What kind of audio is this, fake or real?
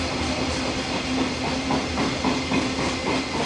real